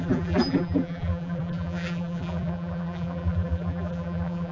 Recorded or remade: remade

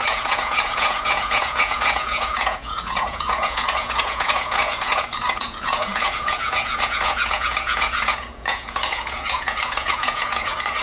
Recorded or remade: remade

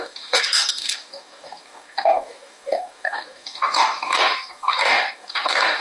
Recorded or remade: remade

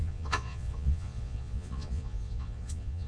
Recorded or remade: remade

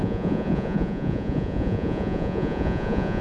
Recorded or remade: remade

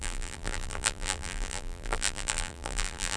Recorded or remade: remade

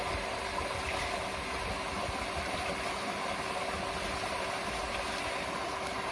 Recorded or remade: recorded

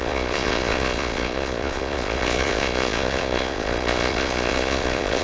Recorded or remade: remade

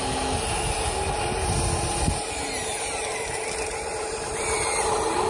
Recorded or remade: recorded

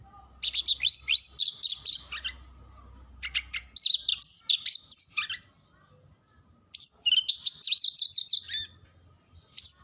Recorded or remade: recorded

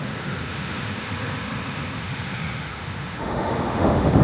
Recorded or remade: remade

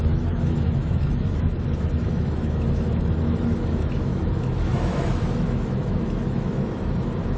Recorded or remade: remade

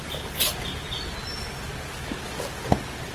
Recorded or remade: recorded